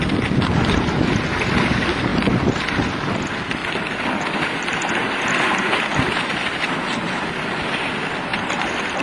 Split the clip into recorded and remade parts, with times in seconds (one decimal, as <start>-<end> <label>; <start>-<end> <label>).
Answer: 0.0-3.6 recorded; 3.6-5.2 remade; 5.2-5.9 recorded; 5.9-6.5 remade; 6.5-8.3 recorded; 8.3-9.0 remade